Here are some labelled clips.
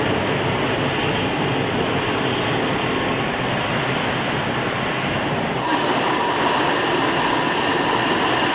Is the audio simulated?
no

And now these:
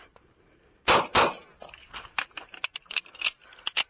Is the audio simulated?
no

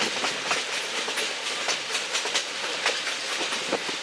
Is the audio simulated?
no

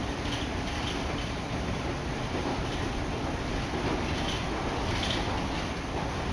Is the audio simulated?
no